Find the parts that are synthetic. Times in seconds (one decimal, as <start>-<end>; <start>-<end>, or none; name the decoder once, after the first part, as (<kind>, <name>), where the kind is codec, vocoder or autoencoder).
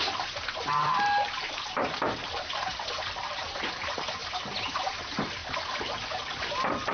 2.7-3.6 (vocoder, BigVGAN v2)